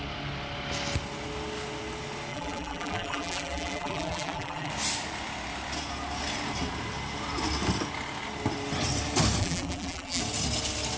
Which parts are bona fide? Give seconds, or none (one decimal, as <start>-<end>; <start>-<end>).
0.0-2.3; 4.7-9.4; 10.2-11.0